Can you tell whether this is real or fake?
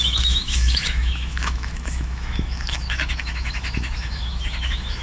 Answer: fake